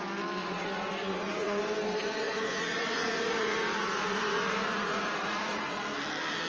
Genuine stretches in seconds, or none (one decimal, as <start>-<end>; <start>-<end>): 0.0-0.4; 1.6-2.0; 5.8-6.5